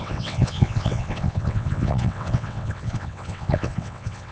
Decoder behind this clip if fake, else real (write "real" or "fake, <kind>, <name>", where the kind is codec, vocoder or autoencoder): fake, vocoder, WaveNeXt